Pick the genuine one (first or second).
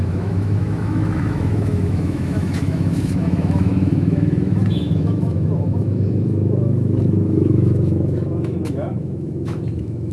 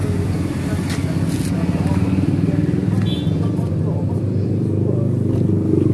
second